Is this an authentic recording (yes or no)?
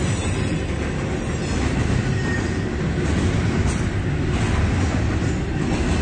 yes